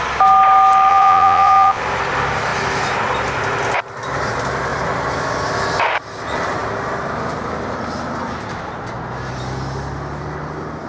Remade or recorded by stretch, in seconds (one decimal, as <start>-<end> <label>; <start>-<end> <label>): 0.0-0.9 recorded; 0.9-1.8 remade; 1.8-10.9 recorded